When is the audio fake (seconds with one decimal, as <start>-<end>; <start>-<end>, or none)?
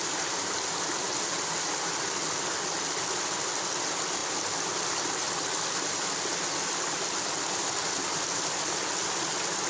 none